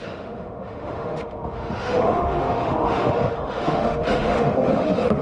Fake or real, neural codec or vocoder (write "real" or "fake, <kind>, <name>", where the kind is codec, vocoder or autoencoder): fake, autoencoder, DAC-VAE